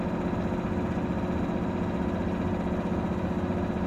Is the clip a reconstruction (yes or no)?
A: no